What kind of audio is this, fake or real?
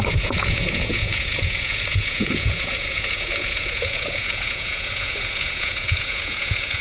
fake